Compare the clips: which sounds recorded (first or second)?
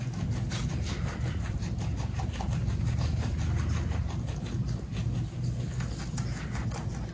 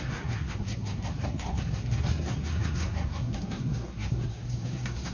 first